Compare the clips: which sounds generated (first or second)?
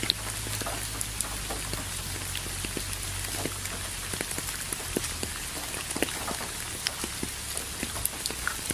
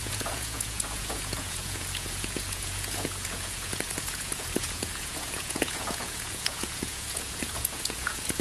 second